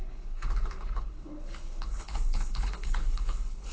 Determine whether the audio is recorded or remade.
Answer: remade